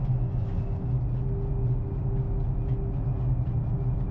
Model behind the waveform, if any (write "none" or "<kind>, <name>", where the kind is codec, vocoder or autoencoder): none